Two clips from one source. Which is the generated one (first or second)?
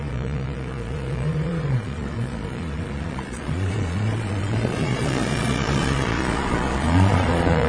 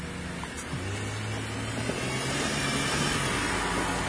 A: first